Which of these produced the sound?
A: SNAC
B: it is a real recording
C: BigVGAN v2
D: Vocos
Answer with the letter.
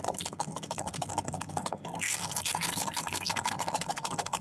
A